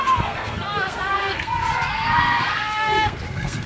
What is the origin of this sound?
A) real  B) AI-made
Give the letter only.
B